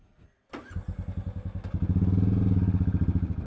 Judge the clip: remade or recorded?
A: recorded